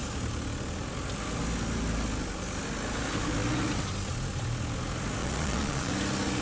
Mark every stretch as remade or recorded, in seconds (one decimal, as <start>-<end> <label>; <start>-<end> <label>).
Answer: 0.0-5.2 recorded; 5.2-5.9 remade; 5.9-6.4 recorded